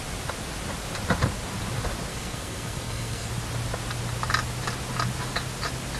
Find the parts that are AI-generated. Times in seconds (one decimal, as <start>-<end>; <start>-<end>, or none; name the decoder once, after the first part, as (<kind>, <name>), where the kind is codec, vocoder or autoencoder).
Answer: 2.1-3.3 (codec, SNAC)